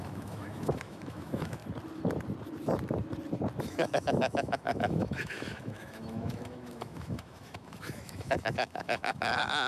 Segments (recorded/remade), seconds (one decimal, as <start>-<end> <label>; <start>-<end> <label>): 0.0-1.6 remade; 1.6-3.6 recorded; 3.6-9.7 remade